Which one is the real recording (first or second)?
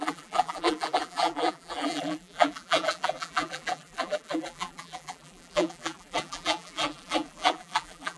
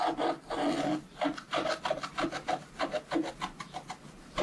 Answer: second